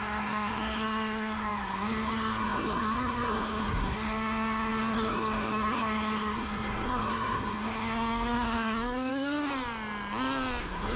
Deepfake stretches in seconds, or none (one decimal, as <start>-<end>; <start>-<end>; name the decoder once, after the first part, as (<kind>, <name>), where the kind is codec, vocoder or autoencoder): 0.0-9.5 (codec, SNAC); 10.6-11.0